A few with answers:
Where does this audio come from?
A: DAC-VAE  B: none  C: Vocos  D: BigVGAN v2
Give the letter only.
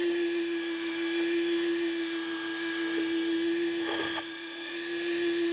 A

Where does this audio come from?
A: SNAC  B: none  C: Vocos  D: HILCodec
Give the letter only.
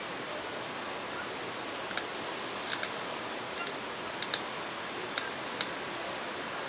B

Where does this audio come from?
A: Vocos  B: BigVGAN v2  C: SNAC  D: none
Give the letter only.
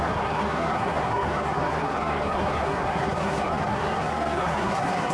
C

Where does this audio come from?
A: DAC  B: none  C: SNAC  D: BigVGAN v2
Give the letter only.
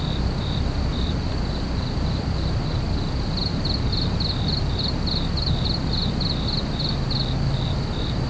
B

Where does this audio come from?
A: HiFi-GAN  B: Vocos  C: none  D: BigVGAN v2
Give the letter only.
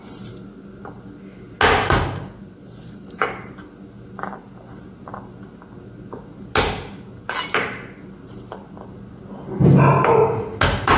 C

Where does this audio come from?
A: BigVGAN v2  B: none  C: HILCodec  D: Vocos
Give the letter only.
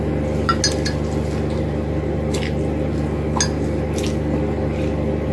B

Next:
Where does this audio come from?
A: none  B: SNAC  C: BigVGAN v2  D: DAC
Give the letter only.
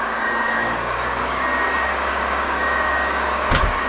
D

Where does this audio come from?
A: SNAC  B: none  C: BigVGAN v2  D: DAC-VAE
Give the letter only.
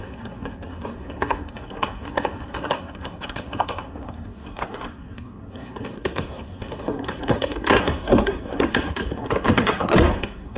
A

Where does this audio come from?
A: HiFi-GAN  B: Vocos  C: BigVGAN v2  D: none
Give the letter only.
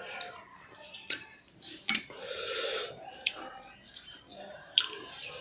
C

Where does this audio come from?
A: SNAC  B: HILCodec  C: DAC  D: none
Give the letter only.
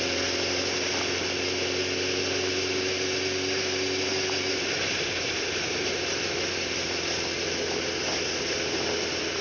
D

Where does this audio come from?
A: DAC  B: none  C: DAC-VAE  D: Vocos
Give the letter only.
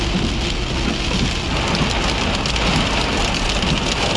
B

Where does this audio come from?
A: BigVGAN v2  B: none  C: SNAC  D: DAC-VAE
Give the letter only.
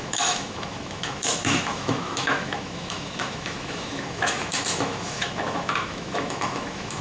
D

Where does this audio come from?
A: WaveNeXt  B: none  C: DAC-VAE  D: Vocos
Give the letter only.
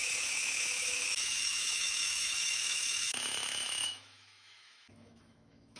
C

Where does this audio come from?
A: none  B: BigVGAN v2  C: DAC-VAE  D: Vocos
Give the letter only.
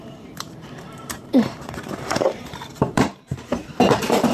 B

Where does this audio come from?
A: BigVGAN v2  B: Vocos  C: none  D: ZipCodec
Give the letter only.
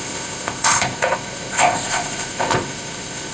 D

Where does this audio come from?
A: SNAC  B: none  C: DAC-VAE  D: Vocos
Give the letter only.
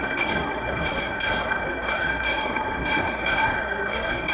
A